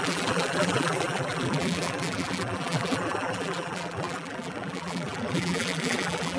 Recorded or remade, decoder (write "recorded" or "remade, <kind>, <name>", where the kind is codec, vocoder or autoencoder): remade, vocoder, BigVGAN v2